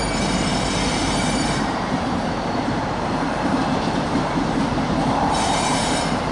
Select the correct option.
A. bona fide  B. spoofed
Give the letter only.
B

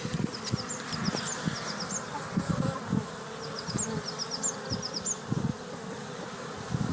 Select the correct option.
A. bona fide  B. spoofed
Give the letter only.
A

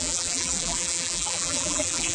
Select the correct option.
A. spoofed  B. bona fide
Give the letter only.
A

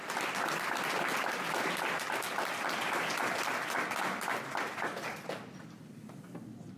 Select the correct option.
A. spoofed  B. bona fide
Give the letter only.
B